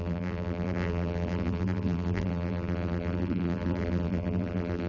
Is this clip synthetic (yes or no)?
yes